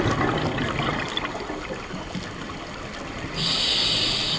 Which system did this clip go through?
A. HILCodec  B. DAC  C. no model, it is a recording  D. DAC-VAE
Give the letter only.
C